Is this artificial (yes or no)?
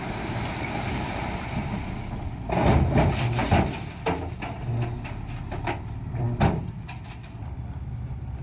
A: no